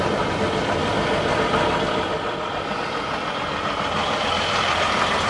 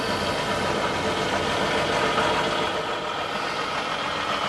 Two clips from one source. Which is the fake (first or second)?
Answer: first